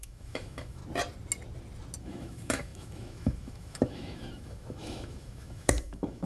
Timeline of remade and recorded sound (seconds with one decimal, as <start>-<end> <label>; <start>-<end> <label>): 0.0-0.8 remade; 0.8-2.0 recorded; 2.0-6.3 remade